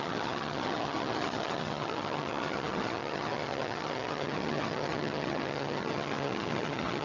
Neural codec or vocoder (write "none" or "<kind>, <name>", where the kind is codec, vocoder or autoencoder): vocoder, HiFi-GAN